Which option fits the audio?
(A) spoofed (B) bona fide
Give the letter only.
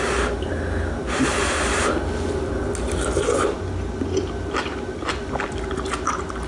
B